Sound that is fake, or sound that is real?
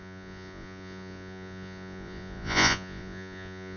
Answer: fake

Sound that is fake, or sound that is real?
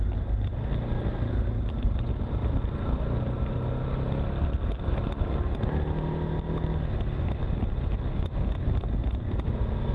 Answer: real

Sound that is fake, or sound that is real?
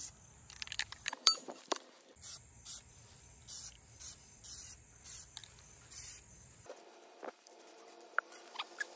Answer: fake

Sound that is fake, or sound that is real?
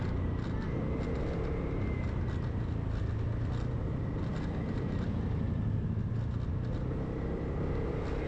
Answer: real